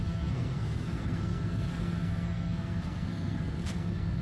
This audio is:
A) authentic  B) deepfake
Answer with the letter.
B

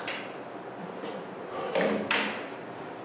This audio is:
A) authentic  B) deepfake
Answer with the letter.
A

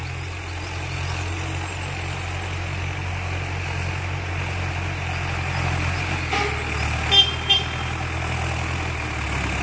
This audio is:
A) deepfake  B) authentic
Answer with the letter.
B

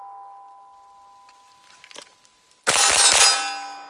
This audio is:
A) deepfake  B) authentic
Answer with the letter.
B